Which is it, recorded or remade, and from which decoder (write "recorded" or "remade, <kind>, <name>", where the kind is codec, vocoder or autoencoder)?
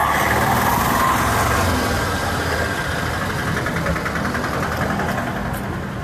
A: recorded